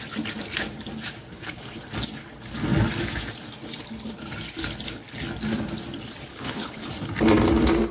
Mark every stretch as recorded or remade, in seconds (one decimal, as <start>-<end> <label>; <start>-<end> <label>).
0.0-1.3 recorded; 1.3-1.8 remade; 1.8-6.3 recorded; 6.3-6.9 remade; 6.9-7.9 recorded